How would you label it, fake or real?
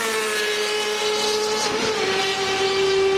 real